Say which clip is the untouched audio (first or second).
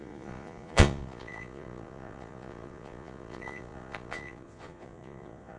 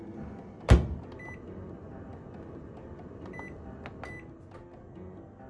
second